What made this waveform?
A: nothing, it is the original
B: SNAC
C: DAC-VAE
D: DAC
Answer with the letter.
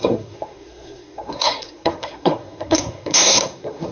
B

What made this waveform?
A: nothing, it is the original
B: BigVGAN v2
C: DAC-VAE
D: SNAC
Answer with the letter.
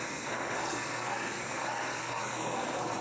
D